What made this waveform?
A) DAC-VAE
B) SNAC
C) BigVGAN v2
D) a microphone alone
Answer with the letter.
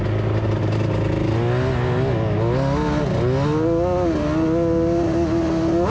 D